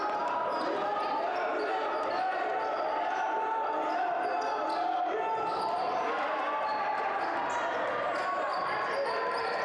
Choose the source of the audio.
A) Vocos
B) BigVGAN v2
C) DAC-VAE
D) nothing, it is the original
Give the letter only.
D